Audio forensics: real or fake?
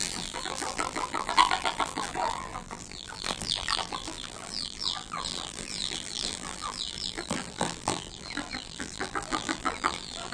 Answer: fake